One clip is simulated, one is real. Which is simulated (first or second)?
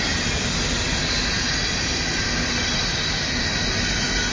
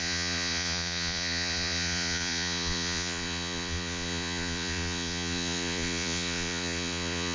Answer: second